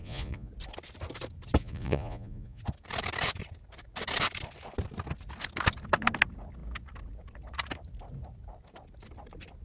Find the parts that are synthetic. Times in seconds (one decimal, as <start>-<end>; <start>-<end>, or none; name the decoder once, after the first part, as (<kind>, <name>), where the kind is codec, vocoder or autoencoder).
0.0-0.5 (vocoder, Vocos); 1.6-2.6